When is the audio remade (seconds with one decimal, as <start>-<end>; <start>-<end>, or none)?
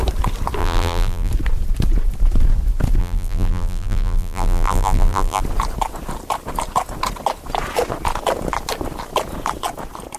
0.6-1.3; 3.0-5.4